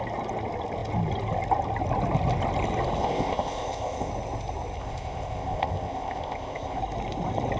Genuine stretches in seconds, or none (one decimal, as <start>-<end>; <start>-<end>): 0.0-3.0; 4.1-4.8; 6.8-7.6